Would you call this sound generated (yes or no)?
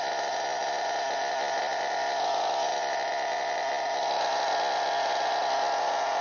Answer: no